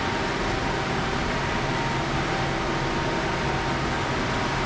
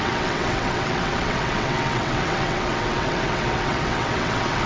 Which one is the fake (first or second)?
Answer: second